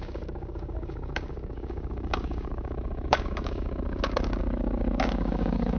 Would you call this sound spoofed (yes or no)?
yes